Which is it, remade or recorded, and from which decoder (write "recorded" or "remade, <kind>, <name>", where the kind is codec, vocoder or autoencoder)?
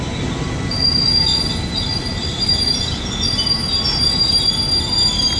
recorded